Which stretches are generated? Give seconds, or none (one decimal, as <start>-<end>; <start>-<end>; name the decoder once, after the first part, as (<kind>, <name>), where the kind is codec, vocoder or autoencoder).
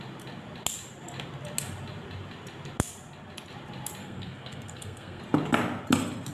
4.0-5.2 (codec, SNAC)